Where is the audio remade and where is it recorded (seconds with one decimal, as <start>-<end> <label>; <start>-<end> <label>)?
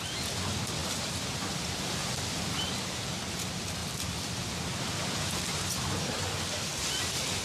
0.0-3.8 recorded; 3.8-4.5 remade; 4.5-7.4 recorded